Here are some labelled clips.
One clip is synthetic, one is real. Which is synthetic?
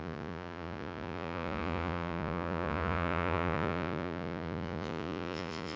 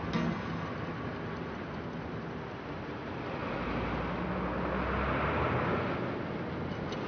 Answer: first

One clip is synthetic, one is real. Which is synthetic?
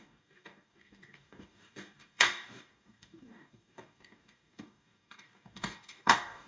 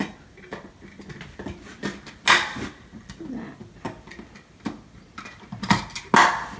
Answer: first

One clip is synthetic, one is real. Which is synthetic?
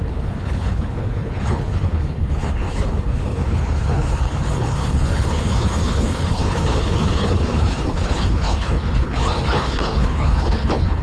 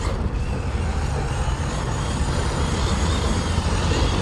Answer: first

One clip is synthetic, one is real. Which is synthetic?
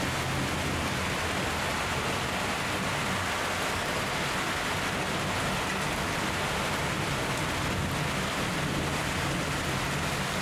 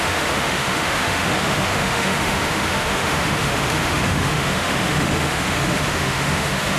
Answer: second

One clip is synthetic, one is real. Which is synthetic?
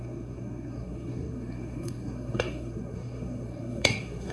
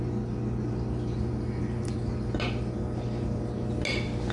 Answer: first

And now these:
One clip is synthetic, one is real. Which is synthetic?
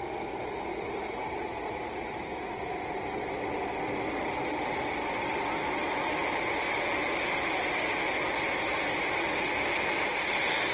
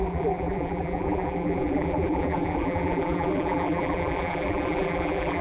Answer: second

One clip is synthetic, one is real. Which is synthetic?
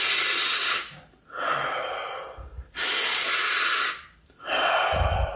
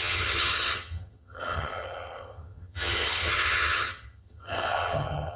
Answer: second